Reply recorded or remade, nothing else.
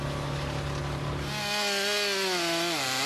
recorded